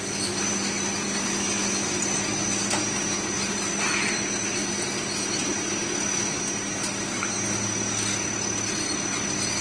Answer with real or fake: real